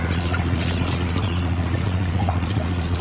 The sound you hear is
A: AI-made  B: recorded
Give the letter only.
A